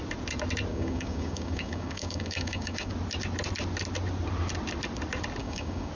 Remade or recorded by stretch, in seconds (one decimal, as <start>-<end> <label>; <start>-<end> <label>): 0.0-0.7 recorded; 0.7-2.9 remade; 2.9-5.4 recorded; 5.4-5.9 remade